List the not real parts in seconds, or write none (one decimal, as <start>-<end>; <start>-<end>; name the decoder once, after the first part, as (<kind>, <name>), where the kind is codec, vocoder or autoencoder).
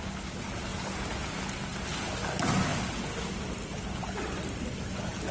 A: none